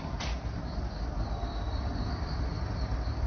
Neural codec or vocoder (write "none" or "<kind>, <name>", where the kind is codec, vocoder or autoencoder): none